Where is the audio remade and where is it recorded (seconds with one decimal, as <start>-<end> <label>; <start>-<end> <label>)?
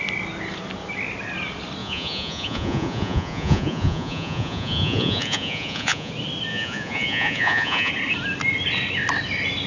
0.0-1.8 recorded; 1.8-6.1 remade; 6.1-6.5 recorded; 6.5-7.9 remade; 7.9-9.7 recorded